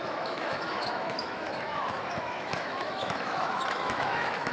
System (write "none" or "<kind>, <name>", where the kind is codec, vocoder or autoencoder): autoencoder, DAC-VAE